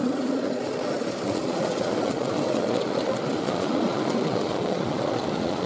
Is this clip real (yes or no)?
no